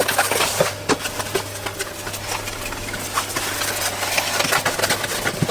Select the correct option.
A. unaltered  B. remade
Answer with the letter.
A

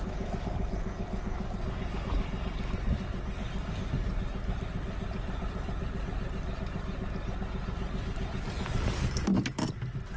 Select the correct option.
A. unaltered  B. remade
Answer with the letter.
A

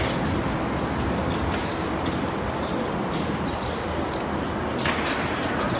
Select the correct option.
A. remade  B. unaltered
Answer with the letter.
B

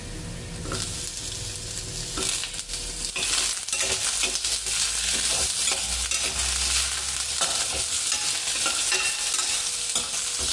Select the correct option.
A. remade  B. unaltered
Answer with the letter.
B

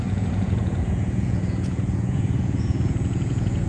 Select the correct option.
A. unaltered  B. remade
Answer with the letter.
B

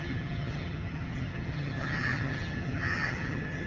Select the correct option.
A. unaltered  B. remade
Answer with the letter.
B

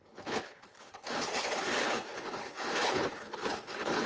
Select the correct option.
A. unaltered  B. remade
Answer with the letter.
B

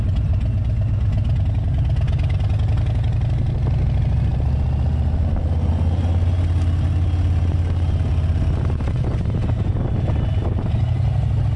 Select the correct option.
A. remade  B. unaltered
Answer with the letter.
B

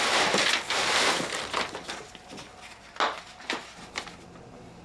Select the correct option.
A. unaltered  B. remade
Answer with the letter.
A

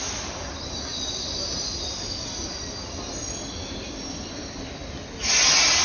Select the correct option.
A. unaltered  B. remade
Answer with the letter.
A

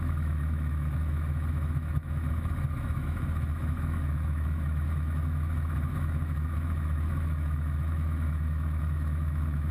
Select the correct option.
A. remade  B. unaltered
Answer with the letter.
A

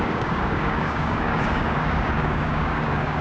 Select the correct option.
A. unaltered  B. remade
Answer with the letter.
B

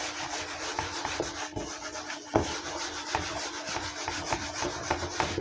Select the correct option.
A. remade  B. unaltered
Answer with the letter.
A